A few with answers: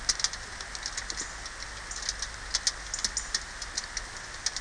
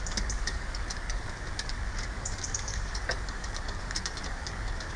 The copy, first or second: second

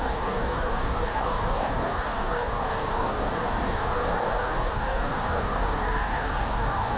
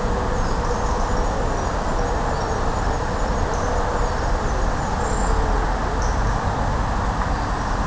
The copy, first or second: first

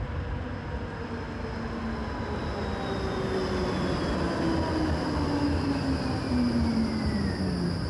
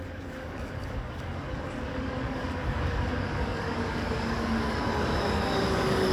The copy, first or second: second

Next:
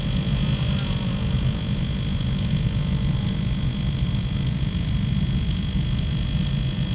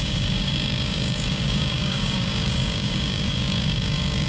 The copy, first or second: second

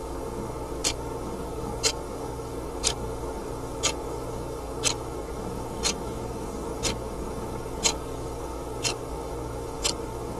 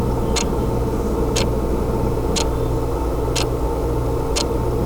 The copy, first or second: first